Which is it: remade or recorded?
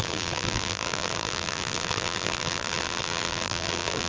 remade